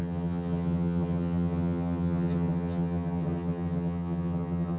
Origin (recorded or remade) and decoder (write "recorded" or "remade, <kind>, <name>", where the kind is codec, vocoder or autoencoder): remade, vocoder, HiFi-GAN